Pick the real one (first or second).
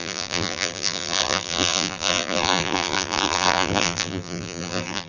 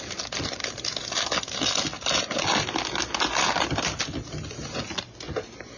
second